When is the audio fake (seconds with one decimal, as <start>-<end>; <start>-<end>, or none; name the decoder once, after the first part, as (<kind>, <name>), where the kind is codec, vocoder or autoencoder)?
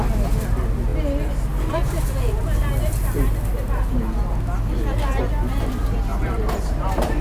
6.1-7.2 (vocoder, BigVGAN v2)